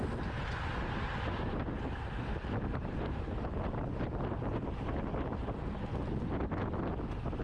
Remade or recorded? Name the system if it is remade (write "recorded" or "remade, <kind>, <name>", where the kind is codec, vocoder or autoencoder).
recorded